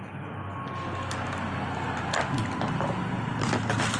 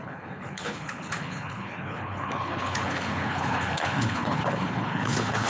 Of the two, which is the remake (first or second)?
second